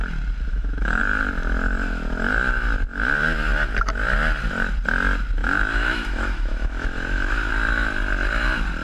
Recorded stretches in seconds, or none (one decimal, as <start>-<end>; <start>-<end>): 0.0-0.5; 1.0-5.4; 7.5-8.8